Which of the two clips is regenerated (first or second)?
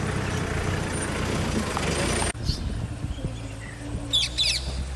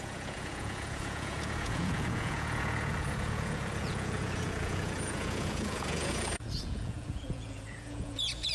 second